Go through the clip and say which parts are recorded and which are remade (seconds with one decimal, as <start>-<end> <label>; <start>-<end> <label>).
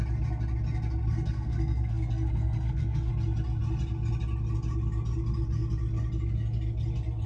0.0-1.0 recorded; 1.0-3.1 remade; 3.1-7.3 recorded